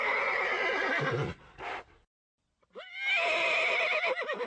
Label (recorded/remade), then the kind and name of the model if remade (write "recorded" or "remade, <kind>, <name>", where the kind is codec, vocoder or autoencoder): recorded